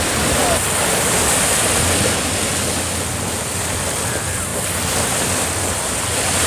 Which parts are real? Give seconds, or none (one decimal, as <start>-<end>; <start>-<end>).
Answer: 0.4-3.5